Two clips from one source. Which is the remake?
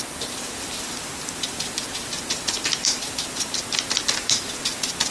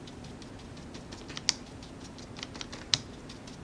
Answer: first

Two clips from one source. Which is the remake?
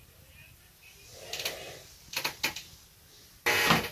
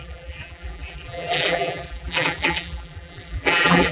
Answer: second